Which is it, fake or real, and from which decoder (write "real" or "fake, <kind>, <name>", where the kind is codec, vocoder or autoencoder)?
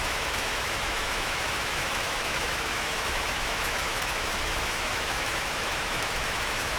fake, autoencoder, DAC-VAE